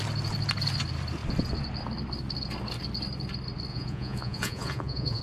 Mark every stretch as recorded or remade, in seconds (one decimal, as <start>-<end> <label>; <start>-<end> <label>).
0.0-3.7 recorded; 3.7-5.2 remade